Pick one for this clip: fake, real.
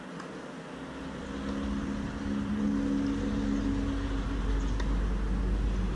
real